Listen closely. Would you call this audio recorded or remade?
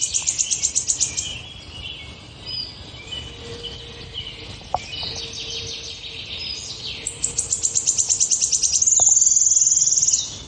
recorded